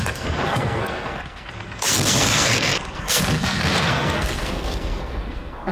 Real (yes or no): no